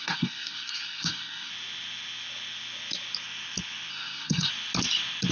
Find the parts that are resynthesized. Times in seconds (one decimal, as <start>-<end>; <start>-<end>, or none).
0.0-1.5; 3.9-4.5